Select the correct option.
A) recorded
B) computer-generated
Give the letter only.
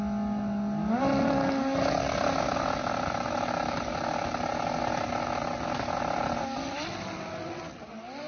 A